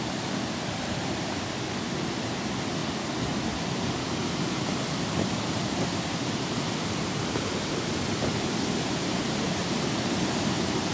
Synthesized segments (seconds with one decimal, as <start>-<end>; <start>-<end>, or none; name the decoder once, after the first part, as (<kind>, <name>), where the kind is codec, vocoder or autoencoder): 0.0-10.9 (vocoder, BigVGAN v2)